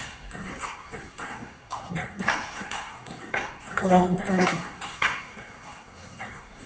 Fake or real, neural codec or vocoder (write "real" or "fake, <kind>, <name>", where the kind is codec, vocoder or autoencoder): fake, codec, SNAC